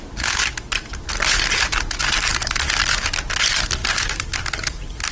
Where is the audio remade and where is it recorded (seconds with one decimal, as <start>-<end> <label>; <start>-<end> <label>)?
0.0-5.1 recorded